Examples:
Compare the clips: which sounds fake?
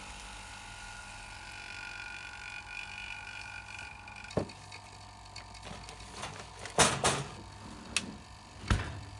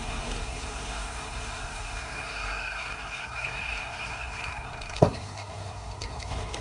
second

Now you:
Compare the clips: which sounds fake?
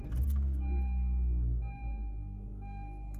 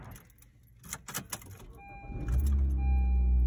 first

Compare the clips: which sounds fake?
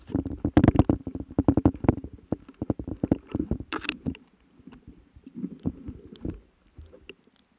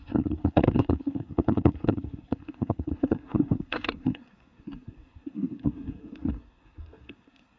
second